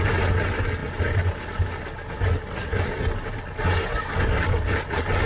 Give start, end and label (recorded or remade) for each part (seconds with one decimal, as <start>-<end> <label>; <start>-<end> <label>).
0.0-5.3 recorded